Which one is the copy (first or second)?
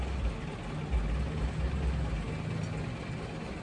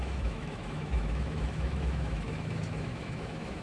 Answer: second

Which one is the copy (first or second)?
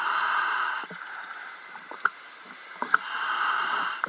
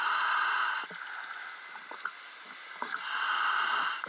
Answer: first